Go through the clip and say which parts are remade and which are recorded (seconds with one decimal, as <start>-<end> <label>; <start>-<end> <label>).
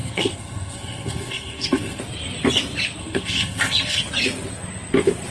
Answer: 0.0-2.0 remade; 2.0-3.0 recorded; 3.0-4.0 remade; 4.0-5.3 recorded